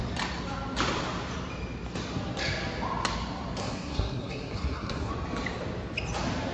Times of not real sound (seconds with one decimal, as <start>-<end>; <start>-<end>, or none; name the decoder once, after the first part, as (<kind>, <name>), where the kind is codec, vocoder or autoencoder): 3.6-5.1 (codec, SNAC)